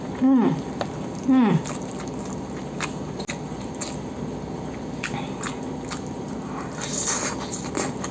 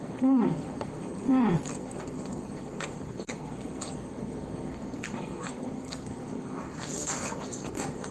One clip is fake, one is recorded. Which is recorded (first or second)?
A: first